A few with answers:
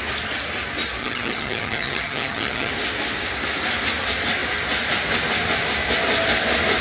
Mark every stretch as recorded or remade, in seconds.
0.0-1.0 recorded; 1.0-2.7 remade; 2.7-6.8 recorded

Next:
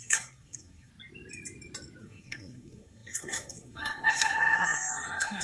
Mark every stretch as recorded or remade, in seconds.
0.0-0.9 remade; 0.9-2.0 recorded; 2.0-5.4 remade

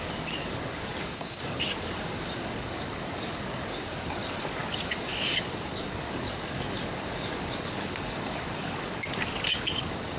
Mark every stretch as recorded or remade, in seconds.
0.0-10.2 remade

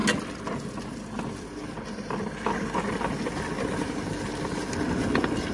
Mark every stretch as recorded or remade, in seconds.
0.0-5.5 recorded

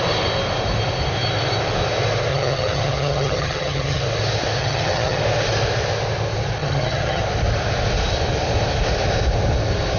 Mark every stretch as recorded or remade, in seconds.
0.0-2.3 recorded; 2.3-4.0 remade; 4.0-4.6 recorded; 4.6-5.2 remade; 5.2-6.6 recorded; 6.6-7.2 remade; 7.2-10.0 recorded

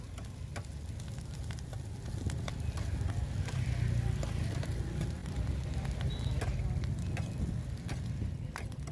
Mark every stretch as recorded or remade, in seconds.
0.0-0.5 recorded; 0.5-1.4 remade; 1.4-8.9 recorded

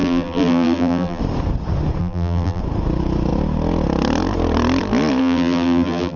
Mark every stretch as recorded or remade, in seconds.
0.0-1.2 remade; 1.2-2.0 recorded; 2.0-2.6 remade; 2.6-5.2 recorded; 5.2-6.2 remade

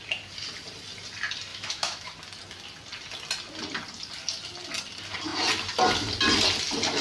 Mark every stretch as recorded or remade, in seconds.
0.0-1.5 recorded; 1.5-2.1 remade; 2.1-7.0 recorded